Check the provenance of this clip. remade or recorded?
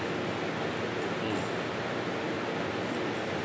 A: recorded